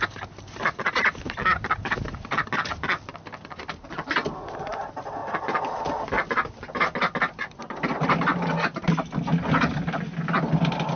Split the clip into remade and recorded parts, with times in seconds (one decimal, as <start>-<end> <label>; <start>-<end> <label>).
0.0-11.0 recorded